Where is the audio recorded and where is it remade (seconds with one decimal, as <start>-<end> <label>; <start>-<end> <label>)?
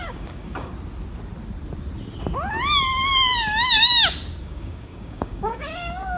0.0-0.7 remade; 0.7-4.4 recorded; 4.4-6.2 remade